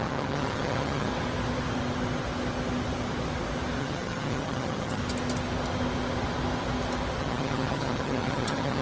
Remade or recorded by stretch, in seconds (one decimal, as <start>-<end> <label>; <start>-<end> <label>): 0.0-1.1 remade; 1.1-3.8 recorded; 3.8-5.0 remade; 5.0-7.2 recorded; 7.2-8.8 remade